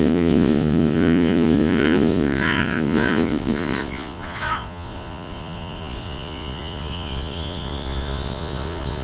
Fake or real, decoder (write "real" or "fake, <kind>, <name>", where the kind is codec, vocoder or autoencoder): fake, vocoder, Vocos